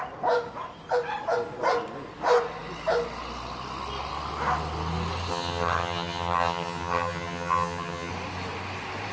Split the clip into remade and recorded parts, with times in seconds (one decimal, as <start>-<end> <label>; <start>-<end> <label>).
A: 0.0-5.3 recorded; 5.3-8.1 remade; 8.1-9.1 recorded